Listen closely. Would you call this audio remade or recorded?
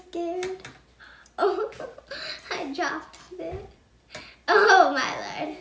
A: recorded